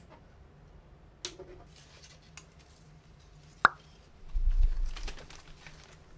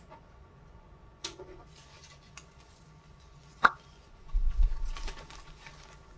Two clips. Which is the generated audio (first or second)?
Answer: second